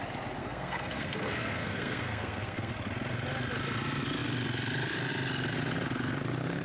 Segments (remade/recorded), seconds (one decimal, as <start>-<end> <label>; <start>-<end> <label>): 0.0-0.4 recorded; 0.4-2.7 remade; 2.7-6.6 recorded